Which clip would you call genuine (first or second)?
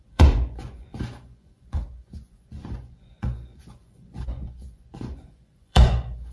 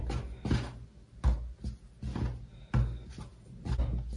second